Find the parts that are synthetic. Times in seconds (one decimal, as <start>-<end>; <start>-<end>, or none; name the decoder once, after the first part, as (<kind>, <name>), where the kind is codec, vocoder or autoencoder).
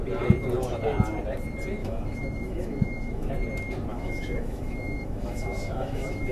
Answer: 1.8-3.3 (autoencoder, DAC-VAE); 3.9-6.3